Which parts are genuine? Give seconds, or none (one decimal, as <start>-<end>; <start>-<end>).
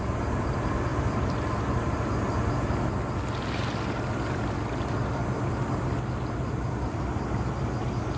0.0-8.2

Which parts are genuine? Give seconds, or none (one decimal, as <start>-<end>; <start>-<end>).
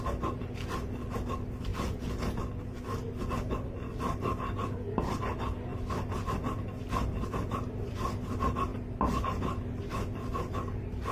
0.0-1.7; 2.4-11.1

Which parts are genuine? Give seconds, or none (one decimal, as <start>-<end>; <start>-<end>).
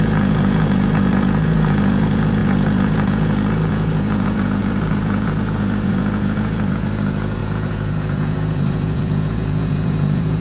none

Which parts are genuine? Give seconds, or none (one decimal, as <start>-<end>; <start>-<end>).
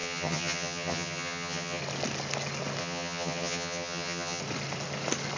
1.8-2.8; 4.4-5.4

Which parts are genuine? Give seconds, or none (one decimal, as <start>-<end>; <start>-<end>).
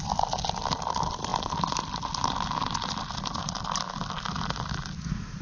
0.0-5.4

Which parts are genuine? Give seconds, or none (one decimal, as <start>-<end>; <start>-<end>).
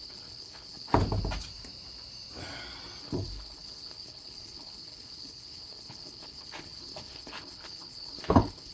0.9-3.0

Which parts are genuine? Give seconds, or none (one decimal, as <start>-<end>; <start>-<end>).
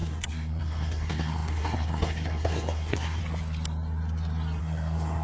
3.2-4.6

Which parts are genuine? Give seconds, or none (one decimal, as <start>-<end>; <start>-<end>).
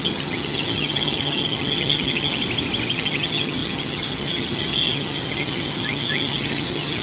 2.4-2.9